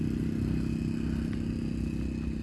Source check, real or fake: real